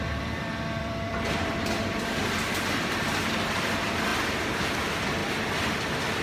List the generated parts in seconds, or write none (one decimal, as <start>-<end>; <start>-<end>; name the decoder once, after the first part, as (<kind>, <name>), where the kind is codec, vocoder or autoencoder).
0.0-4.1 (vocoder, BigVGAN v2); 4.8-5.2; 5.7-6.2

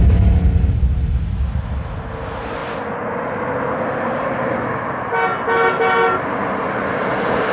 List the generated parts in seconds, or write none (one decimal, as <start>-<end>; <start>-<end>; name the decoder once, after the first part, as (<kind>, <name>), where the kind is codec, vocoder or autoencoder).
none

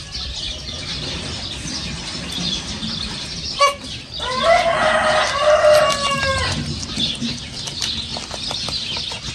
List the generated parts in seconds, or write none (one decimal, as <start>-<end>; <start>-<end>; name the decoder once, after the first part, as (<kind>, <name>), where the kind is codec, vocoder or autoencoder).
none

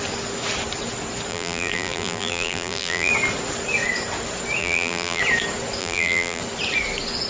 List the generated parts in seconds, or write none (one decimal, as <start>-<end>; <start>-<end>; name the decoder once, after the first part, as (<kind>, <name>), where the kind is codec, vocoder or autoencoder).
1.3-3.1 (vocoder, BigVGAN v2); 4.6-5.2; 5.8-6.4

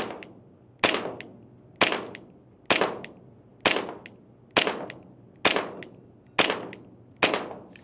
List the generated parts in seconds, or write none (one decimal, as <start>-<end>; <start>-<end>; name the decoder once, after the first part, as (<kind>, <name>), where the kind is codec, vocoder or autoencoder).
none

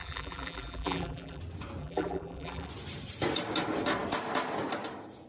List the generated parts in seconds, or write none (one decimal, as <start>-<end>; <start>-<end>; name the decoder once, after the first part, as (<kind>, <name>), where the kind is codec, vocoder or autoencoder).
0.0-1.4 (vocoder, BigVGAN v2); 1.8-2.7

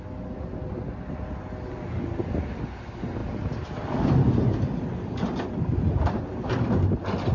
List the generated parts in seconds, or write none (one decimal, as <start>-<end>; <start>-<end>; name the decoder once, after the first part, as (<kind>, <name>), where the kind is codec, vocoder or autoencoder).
none

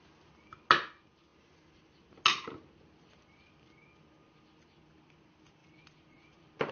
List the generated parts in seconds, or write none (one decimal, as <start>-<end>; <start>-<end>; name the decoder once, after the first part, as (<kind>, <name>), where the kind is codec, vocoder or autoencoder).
none